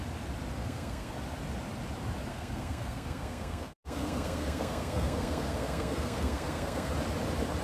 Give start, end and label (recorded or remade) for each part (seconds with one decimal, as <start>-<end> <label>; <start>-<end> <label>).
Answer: 0.0-0.6 recorded; 0.6-1.1 remade; 1.1-2.3 recorded; 2.3-6.9 remade; 6.9-7.6 recorded